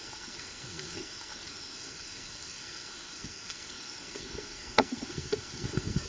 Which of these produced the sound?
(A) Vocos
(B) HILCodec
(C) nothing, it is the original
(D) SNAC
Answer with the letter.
D